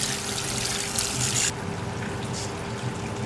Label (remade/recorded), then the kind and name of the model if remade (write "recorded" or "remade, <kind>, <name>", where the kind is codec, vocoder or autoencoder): recorded